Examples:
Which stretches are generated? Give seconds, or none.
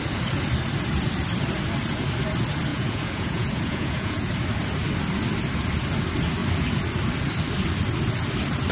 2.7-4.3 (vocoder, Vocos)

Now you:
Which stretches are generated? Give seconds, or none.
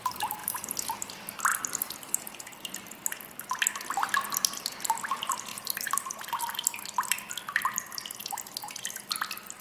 0.4-1.1 (vocoder, BigVGAN v2); 5.5-6.1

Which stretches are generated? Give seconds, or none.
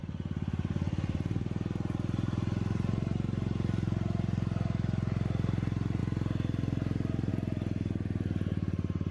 none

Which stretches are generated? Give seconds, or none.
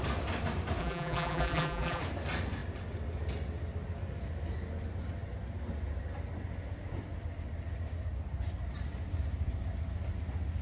0.8-2.0 (vocoder, BigVGAN v2)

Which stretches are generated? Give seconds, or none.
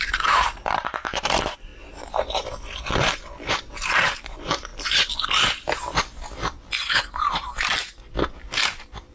0.0-1.7 (vocoder, BigVGAN v2); 3.5-4.7; 8.3-9.1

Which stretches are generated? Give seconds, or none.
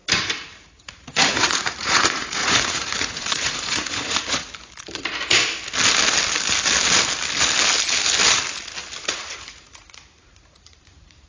0.8-4.5 (vocoder, Vocos); 9.0-11.3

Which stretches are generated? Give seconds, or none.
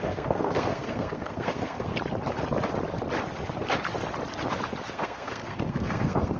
0.0-1.9 (codec, SNAC); 4.9-6.4